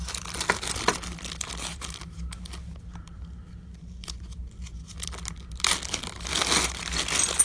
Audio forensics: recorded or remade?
recorded